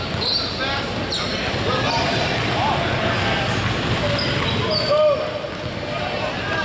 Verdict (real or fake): real